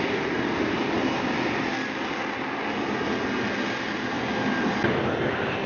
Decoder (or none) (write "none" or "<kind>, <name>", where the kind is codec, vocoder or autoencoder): none